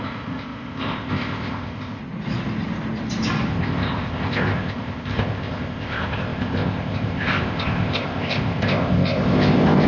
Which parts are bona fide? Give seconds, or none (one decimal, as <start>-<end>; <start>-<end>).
2.0-3.5